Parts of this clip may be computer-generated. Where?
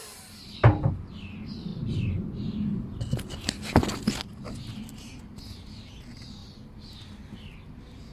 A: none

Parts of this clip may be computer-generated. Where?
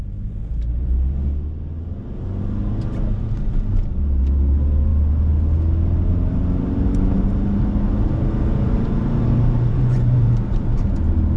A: 9.7-10.3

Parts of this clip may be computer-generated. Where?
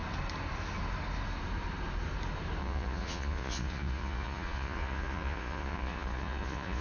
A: 2.6-6.8